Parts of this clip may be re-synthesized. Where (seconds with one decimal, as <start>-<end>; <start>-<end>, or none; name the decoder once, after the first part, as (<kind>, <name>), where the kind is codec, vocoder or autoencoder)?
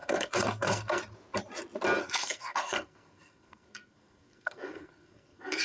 0.0-1.0 (codec, SNAC); 2.0-5.6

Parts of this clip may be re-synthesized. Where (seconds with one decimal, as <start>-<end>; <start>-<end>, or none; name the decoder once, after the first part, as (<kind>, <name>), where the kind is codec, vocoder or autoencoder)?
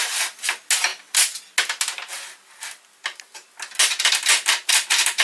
none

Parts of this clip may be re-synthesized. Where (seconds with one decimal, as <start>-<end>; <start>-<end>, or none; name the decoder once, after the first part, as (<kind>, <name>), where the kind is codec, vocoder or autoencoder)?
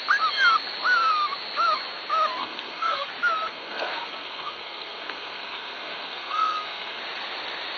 2.4-3.1 (codec, SNAC); 3.5-7.0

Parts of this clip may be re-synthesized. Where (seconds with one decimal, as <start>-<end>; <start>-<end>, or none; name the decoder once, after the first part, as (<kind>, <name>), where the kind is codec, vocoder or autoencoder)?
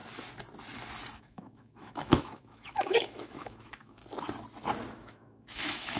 1.2-4.0 (autoencoder, DAC-VAE); 4.9-6.0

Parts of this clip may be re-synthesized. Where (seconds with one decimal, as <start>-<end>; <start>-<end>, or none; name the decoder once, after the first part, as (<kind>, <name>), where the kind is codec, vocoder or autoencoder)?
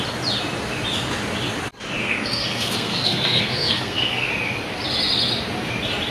2.0-4.3 (codec, SNAC)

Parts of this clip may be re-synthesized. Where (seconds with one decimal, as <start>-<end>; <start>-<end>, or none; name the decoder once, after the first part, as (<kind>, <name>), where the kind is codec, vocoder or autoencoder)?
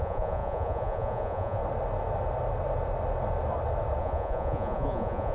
0.0-1.6 (vocoder, Vocos); 4.0-5.3